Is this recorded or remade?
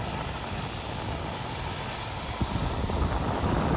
recorded